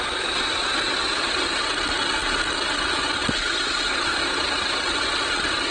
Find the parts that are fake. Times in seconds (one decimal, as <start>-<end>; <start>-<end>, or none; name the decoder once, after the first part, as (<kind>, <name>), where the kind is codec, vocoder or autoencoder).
none

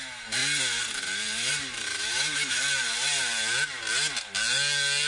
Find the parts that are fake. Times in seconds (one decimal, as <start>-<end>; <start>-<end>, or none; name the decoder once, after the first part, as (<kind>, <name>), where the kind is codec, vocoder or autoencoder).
1.9-2.6 (autoencoder, DAC-VAE)

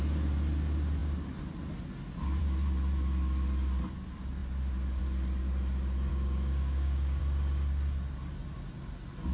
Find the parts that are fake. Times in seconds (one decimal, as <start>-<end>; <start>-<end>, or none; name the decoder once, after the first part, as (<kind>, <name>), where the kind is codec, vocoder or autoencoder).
6.1-7.2 (codec, DAC)

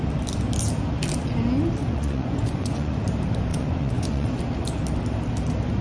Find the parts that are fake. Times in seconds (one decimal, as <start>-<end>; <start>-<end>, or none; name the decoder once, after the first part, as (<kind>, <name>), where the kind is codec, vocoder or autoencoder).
1.8-3.0 (vocoder, Vocos); 3.5-4.4

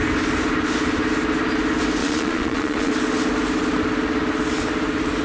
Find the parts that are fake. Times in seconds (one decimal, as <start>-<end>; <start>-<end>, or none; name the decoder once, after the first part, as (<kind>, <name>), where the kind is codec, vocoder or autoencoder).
2.0-2.9 (vocoder, Vocos)

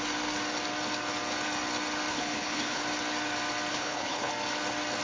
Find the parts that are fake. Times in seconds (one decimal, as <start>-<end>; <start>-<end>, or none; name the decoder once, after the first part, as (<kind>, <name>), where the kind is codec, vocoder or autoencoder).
2.1-2.8 (codec, HILCodec); 3.7-4.3

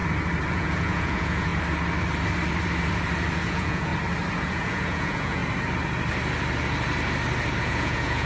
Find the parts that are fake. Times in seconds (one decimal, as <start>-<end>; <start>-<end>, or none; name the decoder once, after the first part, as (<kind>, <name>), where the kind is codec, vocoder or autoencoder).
0.5-1.5 (vocoder, Vocos); 3.5-3.9; 4.5-5.4; 7.6-8.3